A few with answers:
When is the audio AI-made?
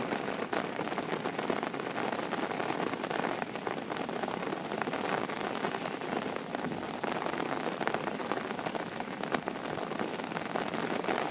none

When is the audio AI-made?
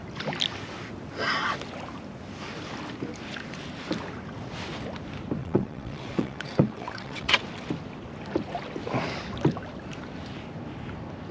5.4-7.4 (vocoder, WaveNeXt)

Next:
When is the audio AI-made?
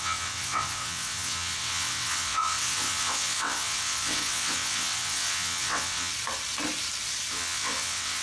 0.0-6.1 (vocoder, WaveNeXt); 7.3-8.2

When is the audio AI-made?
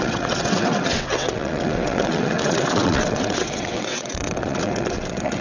0.0-5.4 (vocoder, WaveNeXt)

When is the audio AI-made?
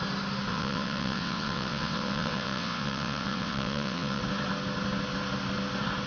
0.5-4.2 (vocoder, WaveNeXt)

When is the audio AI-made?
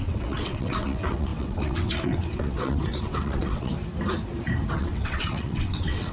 0.0-3.7 (vocoder, WaveNeXt); 4.8-6.1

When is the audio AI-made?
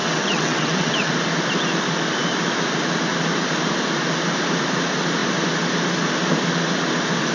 0.0-1.1 (vocoder, WaveNeXt)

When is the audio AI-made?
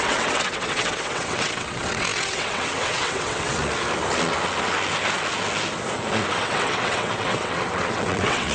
0.0-3.6 (vocoder, WaveNeXt); 6.3-8.5